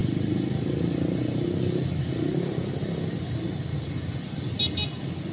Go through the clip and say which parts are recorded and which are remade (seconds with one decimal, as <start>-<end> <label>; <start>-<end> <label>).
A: 0.0-5.3 recorded